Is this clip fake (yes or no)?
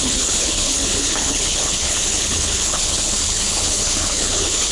yes